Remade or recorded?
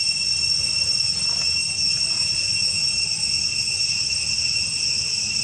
recorded